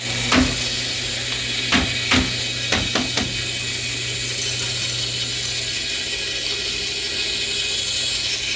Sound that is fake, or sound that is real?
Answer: real